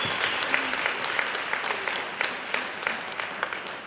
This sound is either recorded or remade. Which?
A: recorded